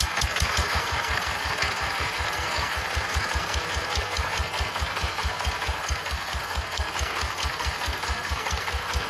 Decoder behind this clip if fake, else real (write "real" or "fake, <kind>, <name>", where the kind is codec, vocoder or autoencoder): fake, codec, SNAC